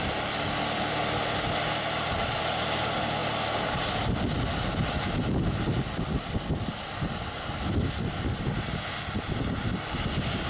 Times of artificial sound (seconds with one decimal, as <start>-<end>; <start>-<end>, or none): none

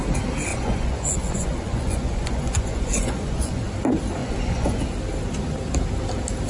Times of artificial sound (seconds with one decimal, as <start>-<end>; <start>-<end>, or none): 0.5-3.7; 4.2-4.8